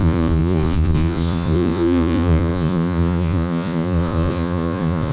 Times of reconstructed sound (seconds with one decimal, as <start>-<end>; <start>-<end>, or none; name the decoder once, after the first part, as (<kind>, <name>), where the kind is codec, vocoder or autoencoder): 0.0-5.1 (vocoder, Vocos)